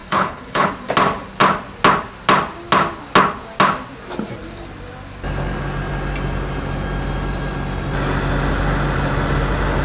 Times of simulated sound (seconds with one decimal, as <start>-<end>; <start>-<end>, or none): 0.0-0.7